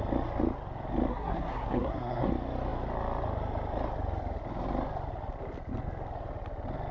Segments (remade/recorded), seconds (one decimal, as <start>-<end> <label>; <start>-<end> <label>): 0.0-1.1 recorded; 1.1-2.3 remade; 2.3-6.9 recorded